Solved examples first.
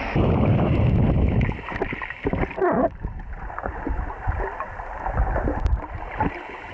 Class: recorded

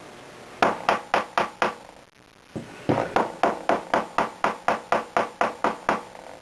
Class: recorded